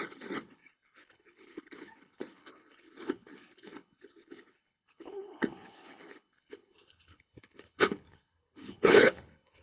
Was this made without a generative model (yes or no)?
no